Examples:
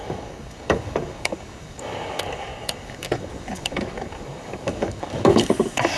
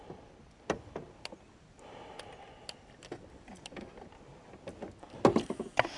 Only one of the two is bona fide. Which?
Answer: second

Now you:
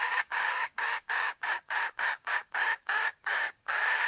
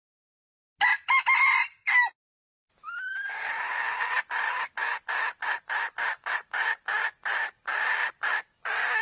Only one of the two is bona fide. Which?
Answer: second